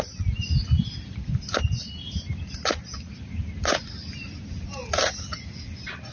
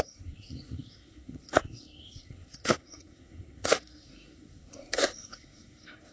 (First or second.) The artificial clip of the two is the second